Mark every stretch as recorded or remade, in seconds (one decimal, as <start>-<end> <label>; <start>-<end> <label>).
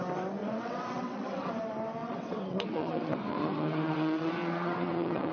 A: 0.0-0.4 recorded; 0.4-1.5 remade; 1.5-2.0 recorded; 2.0-5.3 remade